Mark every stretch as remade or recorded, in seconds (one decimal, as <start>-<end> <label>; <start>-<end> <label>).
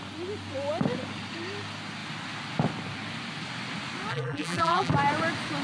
0.0-4.1 recorded; 4.1-4.9 remade; 4.9-5.6 recorded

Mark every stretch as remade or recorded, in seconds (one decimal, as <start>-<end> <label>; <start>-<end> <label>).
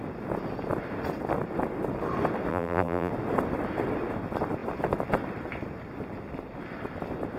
0.0-2.5 recorded; 2.5-3.1 remade; 3.1-7.4 recorded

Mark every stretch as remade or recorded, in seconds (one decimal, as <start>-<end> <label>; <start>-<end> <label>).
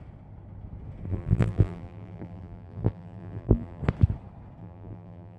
0.0-1.1 recorded; 1.1-3.8 remade; 3.8-4.6 recorded; 4.6-5.4 remade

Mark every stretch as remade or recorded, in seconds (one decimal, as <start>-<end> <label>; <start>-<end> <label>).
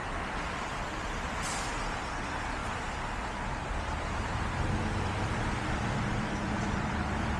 0.0-2.6 recorded; 2.6-5.5 remade; 5.5-7.4 recorded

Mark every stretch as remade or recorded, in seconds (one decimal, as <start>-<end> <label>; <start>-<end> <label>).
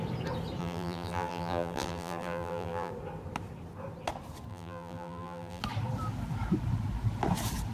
0.0-0.6 recorded; 0.6-2.9 remade; 2.9-4.5 recorded; 4.5-5.6 remade; 5.6-7.7 recorded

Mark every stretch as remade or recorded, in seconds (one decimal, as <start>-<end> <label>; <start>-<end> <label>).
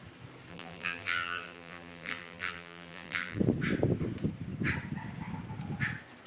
0.0-0.5 recorded; 0.5-3.4 remade; 3.4-6.3 recorded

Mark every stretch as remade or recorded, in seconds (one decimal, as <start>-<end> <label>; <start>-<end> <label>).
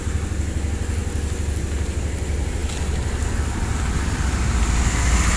0.0-5.4 recorded